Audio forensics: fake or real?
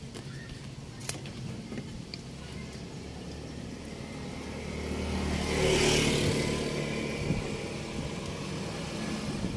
real